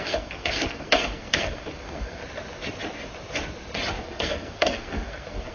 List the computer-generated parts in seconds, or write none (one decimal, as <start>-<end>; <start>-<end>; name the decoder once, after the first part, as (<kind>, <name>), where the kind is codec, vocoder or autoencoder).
0.0-2.2 (codec, SNAC); 4.0-5.5